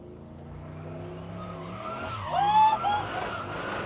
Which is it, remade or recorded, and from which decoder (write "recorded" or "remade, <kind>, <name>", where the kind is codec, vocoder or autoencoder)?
recorded